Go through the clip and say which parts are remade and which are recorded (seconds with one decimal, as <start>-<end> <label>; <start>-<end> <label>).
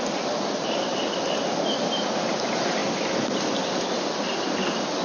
0.0-5.0 recorded